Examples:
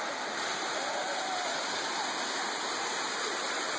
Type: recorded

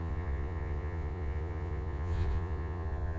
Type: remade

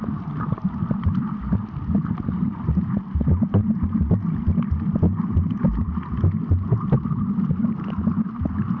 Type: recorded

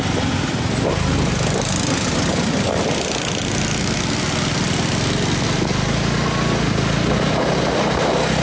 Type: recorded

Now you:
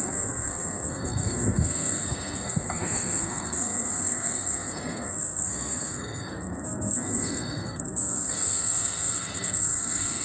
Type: remade